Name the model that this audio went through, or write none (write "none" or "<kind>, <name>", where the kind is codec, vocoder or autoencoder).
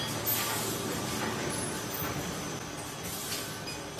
none